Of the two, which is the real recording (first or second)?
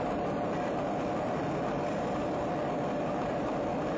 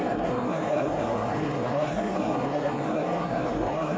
first